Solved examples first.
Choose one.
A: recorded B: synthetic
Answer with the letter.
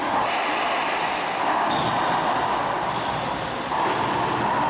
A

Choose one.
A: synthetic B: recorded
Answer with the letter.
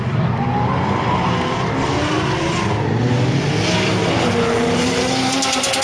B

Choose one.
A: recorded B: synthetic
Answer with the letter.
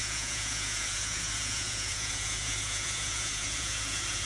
B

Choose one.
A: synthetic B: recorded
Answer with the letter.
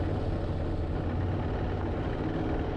B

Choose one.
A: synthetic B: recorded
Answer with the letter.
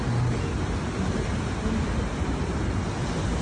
B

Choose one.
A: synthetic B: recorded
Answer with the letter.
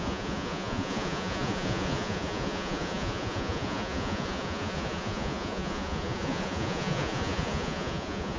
A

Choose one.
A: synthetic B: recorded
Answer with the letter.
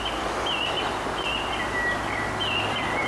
B